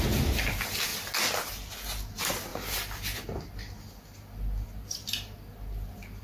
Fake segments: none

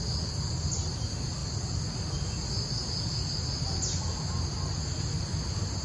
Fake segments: none